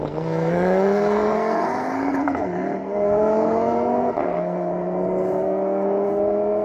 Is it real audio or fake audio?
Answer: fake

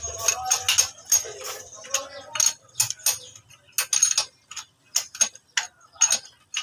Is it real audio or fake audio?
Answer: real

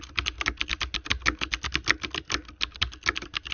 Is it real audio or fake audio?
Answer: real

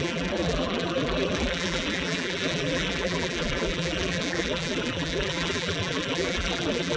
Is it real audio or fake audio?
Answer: fake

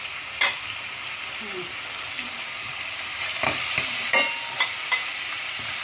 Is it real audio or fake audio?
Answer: fake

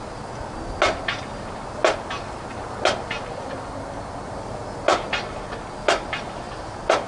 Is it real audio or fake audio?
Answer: real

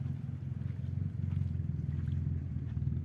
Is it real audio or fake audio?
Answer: real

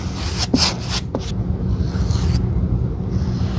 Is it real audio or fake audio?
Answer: real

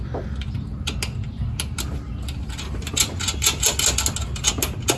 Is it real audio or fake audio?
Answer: real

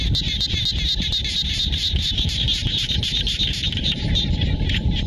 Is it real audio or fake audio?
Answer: real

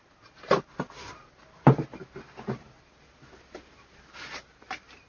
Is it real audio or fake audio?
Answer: real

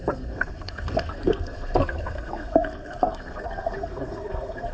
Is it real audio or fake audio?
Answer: fake